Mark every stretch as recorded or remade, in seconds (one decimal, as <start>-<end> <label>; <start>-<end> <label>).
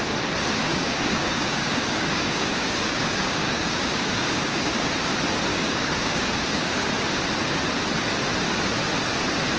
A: 0.0-0.6 recorded; 0.6-4.9 remade; 4.9-5.5 recorded; 5.5-6.9 remade; 6.9-9.6 recorded